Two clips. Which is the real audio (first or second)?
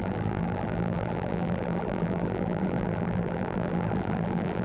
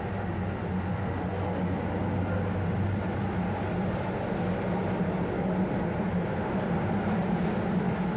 second